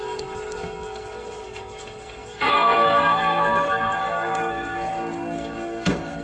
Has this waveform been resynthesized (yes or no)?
yes